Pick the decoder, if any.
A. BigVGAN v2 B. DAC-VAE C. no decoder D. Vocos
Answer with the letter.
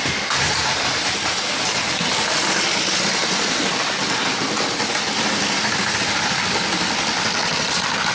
C